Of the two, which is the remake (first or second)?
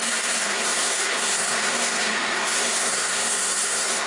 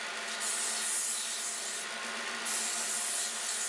first